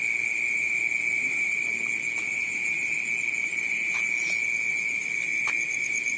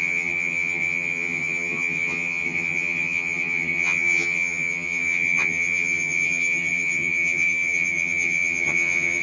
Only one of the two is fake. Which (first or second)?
second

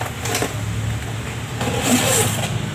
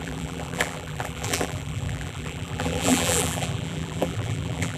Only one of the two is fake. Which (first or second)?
second